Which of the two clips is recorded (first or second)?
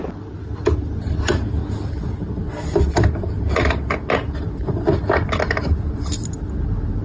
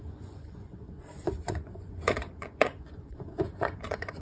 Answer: first